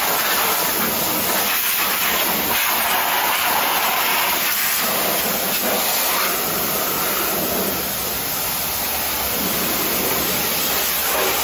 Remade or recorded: recorded